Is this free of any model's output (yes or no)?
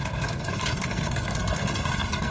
no